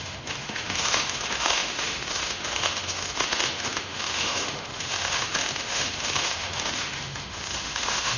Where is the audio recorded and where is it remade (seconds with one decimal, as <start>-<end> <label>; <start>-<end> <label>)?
0.0-8.2 remade